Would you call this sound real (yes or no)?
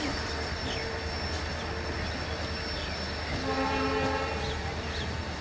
yes